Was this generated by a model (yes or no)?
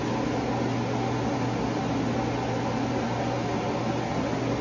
no